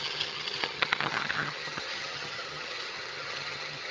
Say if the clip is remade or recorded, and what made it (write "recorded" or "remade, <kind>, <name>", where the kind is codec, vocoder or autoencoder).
remade, vocoder, HiFi-GAN